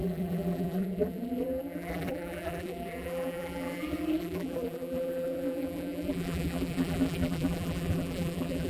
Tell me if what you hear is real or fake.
fake